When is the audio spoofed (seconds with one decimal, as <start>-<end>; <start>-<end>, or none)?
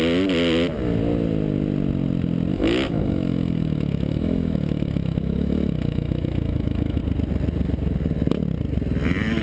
2.5-7.0